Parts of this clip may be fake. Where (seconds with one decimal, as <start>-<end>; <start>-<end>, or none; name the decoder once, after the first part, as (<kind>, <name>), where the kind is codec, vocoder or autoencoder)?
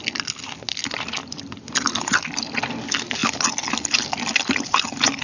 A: 1.2-2.2 (vocoder, BigVGAN v2)